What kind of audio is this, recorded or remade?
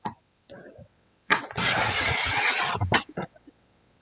remade